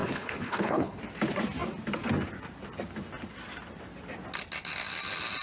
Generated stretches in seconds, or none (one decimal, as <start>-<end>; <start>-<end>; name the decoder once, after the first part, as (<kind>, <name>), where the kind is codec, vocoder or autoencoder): 0.0-1.0 (codec, HILCodec)